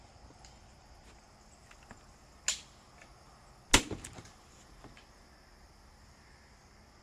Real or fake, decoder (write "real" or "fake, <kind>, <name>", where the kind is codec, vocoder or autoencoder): real